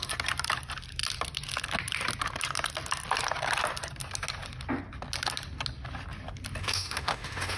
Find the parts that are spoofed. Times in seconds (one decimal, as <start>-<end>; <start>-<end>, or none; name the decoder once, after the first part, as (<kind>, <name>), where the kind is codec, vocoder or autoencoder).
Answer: 6.6-7.6 (autoencoder, DAC-VAE)